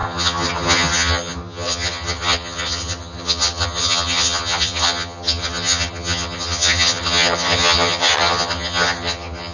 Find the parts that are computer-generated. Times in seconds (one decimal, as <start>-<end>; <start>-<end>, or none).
0.0-9.5